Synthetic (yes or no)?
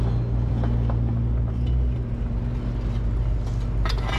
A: no